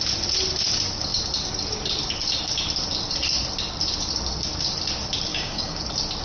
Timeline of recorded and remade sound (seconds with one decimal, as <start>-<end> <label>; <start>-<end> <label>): 0.0-5.3 recorded; 5.3-5.8 remade; 5.8-6.2 recorded